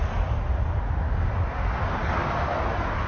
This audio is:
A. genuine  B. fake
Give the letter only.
A